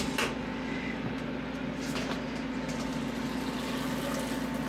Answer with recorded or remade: recorded